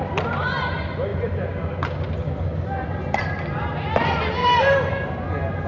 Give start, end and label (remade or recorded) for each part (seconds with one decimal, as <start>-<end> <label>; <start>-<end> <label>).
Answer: 0.0-4.4 recorded; 4.4-5.1 remade; 5.1-5.7 recorded